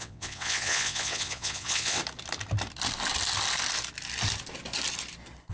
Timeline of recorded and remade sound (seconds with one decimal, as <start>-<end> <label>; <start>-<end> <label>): 0.0-2.0 remade; 2.0-5.5 recorded